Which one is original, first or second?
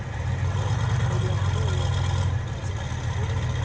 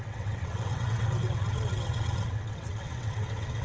first